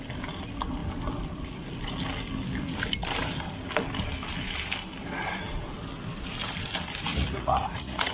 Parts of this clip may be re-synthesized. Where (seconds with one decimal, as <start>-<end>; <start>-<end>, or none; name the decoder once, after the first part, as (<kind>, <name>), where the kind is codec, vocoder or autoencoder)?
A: 7.1-8.1 (vocoder, Vocos)